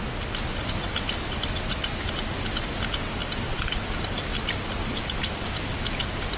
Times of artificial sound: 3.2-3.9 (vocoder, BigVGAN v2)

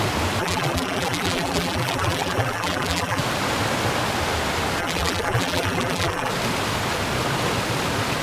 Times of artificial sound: 0.4-3.2 (vocoder, BigVGAN v2); 4.8-6.3

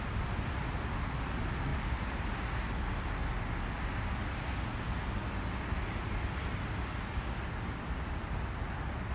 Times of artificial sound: none

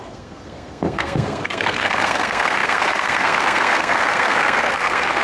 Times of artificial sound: 0.0-5.2 (codec, SNAC)

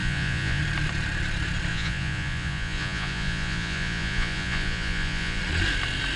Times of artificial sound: 0.0-0.6 (vocoder, Vocos); 1.7-5.4

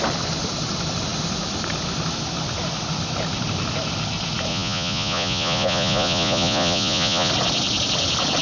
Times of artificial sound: 4.5-7.3 (vocoder, Vocos)